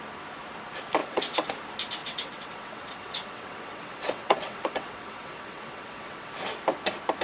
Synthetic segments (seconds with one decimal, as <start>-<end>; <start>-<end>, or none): 1.0-1.5; 2.0-6.3

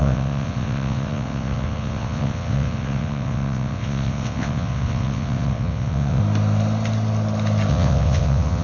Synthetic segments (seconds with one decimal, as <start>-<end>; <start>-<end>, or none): 0.0-6.2; 7.7-8.6

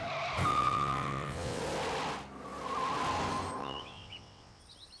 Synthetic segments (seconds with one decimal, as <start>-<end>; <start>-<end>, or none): 0.5-1.6; 3.6-4.6

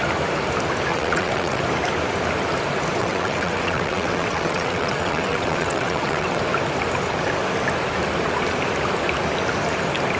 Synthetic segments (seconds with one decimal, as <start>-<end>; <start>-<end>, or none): 0.9-1.6; 3.0-6.4

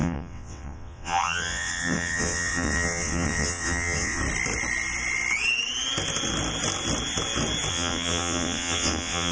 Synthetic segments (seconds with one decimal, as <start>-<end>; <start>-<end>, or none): 0.0-4.2; 7.7-9.3

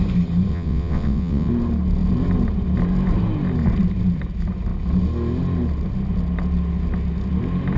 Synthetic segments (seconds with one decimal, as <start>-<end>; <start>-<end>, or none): 0.5-1.5